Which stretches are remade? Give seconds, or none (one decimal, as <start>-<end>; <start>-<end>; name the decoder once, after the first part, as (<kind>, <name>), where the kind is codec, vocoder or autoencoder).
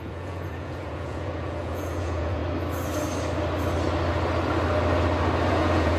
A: 0.0-2.4 (vocoder, Vocos); 5.5-6.0